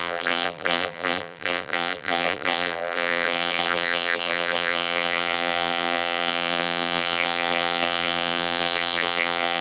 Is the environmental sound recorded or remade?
remade